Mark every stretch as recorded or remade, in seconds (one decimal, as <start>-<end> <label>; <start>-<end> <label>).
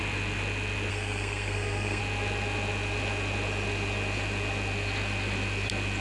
0.0-0.9 recorded; 0.9-2.0 remade; 2.0-6.0 recorded